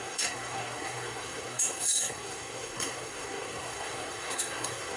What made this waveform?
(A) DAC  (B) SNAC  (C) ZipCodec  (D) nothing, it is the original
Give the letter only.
B